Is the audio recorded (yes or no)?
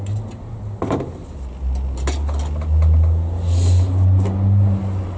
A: yes